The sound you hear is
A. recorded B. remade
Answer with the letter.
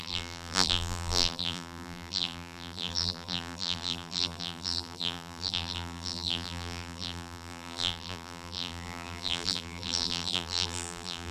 B